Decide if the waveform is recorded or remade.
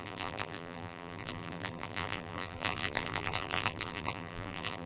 remade